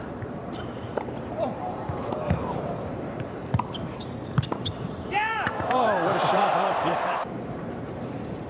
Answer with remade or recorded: remade